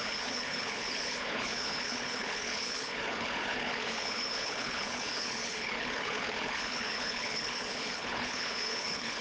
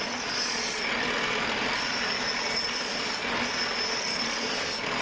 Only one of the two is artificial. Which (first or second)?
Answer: first